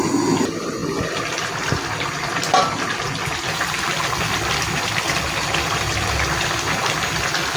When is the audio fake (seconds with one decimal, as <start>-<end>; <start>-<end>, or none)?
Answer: none